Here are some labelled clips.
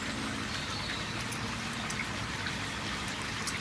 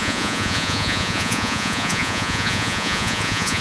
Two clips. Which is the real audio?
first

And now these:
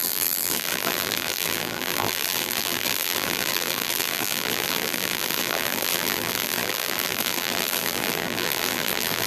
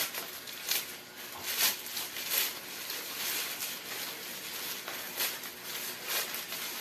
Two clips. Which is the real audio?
second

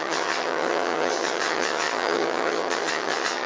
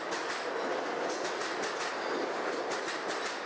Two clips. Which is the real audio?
second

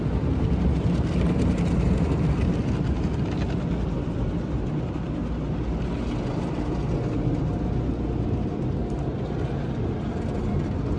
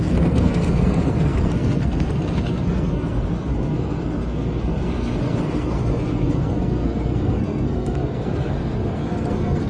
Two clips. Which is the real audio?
first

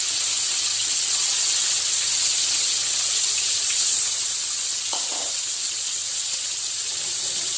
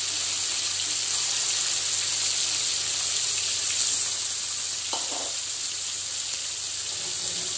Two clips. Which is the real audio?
second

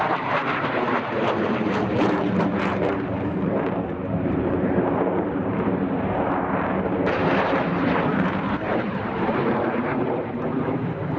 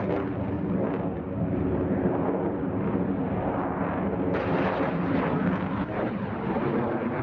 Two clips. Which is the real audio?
second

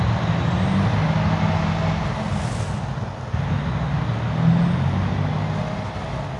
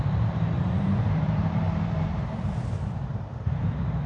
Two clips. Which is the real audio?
first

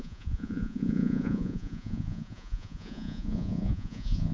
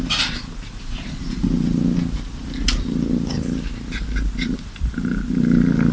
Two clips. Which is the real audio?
second